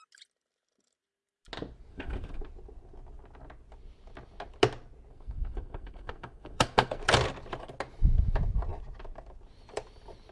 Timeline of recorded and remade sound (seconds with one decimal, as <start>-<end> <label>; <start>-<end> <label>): 0.0-1.9 recorded; 1.9-2.4 remade; 2.4-5.1 recorded; 5.1-7.0 remade; 7.0-10.3 recorded